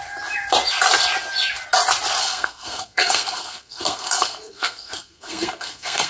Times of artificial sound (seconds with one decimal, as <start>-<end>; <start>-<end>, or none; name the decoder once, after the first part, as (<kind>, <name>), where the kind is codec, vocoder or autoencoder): 2.2-6.1 (codec, SNAC)